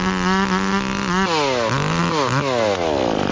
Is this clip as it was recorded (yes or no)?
yes